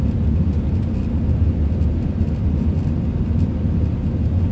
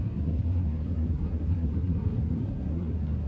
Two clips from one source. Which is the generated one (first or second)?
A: second